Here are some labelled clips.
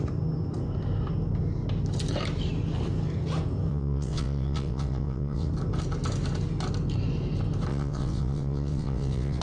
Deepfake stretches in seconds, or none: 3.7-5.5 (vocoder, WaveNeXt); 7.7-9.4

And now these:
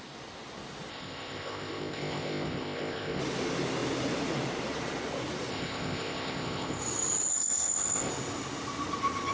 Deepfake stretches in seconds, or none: 0.9-3.2 (codec, ZipCodec); 5.5-6.8; 7.3-8.1

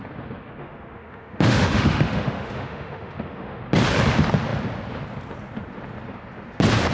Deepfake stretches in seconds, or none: 0.6-3.6 (autoencoder, DAC-VAE)

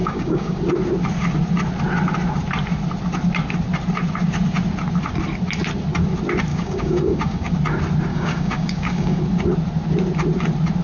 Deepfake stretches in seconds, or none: 0.0-0.6 (codec, DAC); 6.5-7.5; 8.1-9.2

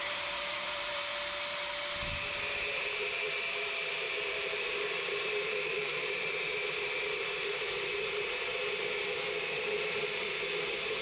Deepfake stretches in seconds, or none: 0.0-1.1 (vocoder, BigVGAN v2); 2.7-11.0

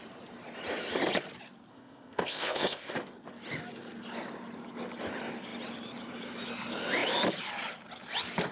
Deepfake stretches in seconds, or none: 1.7-2.9 (codec, ZipCodec)

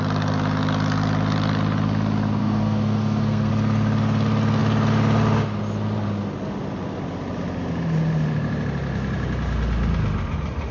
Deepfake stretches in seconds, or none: 2.4-3.5 (codec, SNAC)

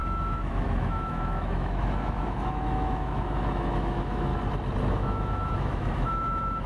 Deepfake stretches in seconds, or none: 0.0-4.3 (autoencoder, DAC-VAE); 4.9-6.7